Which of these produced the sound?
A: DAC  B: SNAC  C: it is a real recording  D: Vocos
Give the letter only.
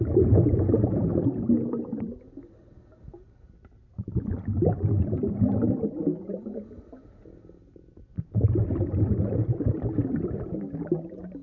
C